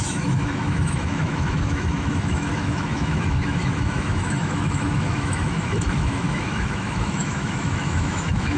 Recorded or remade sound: remade